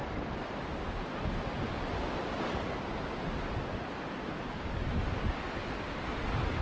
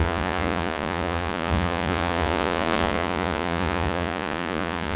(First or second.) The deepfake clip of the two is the second